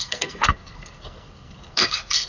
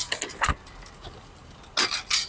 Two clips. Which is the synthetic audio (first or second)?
first